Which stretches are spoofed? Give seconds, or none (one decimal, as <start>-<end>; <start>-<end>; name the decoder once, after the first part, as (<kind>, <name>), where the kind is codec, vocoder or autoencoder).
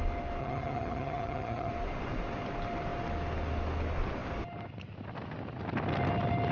0.4-1.7 (vocoder, HiFi-GAN)